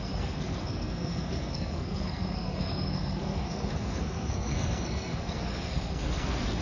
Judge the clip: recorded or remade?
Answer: remade